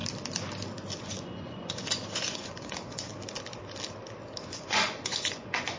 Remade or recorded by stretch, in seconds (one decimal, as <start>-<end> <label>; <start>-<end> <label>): 0.0-1.0 recorded; 1.0-3.1 remade; 3.1-4.5 recorded; 4.5-5.8 remade